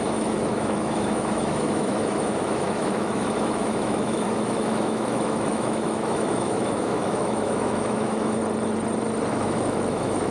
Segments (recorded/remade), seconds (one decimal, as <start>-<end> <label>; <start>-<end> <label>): 0.0-8.4 remade; 8.4-9.3 recorded; 9.3-10.3 remade